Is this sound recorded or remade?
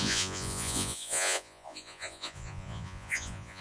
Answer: remade